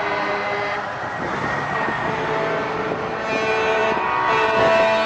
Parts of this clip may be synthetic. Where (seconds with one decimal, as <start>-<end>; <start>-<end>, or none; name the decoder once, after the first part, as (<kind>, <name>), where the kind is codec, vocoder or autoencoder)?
none